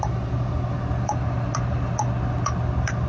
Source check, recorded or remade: recorded